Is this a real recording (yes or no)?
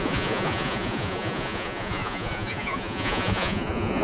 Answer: no